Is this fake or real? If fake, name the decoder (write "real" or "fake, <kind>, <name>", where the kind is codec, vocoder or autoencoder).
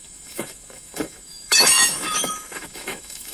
fake, autoencoder, DAC-VAE